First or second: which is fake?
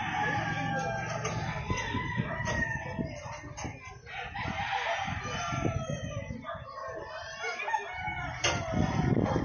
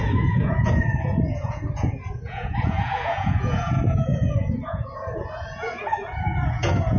second